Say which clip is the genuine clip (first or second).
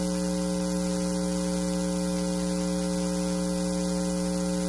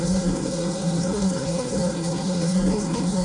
first